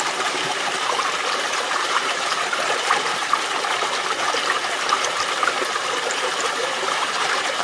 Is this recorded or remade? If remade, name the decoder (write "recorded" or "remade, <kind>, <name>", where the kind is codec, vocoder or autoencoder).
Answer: remade, vocoder, BigVGAN v2